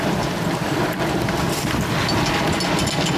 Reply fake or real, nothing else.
real